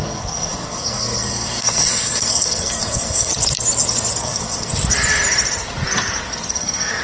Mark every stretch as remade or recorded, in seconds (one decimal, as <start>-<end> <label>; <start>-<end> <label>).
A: 0.0-3.3 remade; 3.3-4.2 recorded; 4.2-4.7 remade; 4.7-6.5 recorded; 6.5-7.0 remade